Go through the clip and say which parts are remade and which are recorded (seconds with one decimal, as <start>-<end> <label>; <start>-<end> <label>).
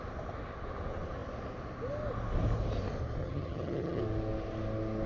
0.0-3.2 recorded; 3.2-4.0 remade; 4.0-5.1 recorded